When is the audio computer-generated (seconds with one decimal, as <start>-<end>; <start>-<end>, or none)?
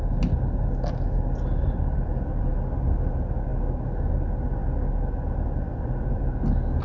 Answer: 1.5-2.5; 5.7-6.3